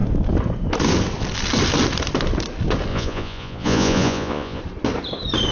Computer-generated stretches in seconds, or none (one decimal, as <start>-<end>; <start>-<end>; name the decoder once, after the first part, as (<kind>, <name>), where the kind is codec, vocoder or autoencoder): 2.9-4.6 (vocoder, Vocos)